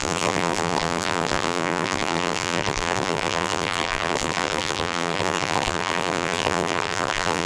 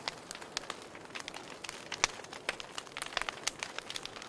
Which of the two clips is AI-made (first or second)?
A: first